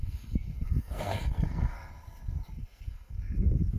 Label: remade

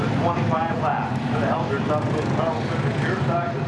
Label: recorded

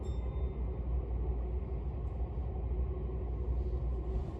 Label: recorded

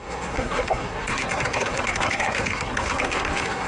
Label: remade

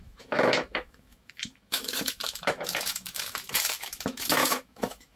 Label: remade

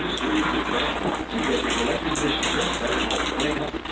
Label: recorded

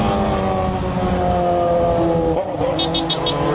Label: recorded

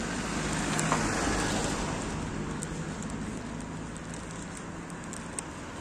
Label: recorded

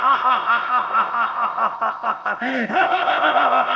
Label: remade